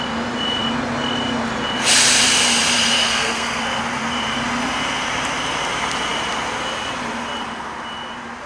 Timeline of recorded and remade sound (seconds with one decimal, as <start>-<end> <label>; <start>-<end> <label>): 0.0-3.1 recorded; 3.1-3.6 remade; 3.6-8.5 recorded